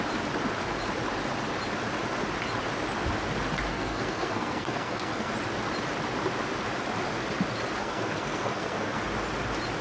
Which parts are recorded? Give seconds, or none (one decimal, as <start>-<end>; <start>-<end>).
0.0-3.7; 5.3-7.8; 9.0-9.8